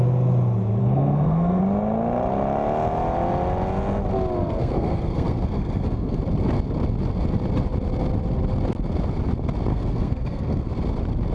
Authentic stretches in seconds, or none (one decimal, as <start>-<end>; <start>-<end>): 0.0-0.8; 1.6-4.6; 6.2-9.7; 10.7-11.3